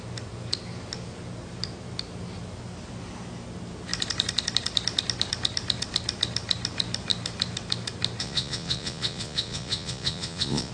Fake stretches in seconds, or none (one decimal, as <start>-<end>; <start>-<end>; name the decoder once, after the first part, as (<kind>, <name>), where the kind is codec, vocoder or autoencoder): 8.2-10.7 (vocoder, Vocos)